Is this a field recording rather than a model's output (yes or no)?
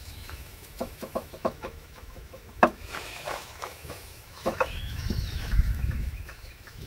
no